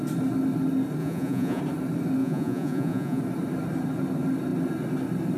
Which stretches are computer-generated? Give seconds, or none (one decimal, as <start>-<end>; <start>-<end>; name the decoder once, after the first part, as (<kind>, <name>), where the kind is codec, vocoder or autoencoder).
1.0-1.6 (vocoder, Vocos); 2.2-3.2